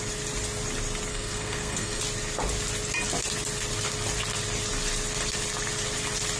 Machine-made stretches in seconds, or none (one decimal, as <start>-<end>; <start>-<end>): 1.1-2.0